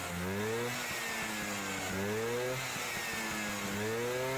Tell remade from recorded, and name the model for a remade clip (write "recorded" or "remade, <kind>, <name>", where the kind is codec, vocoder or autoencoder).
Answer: recorded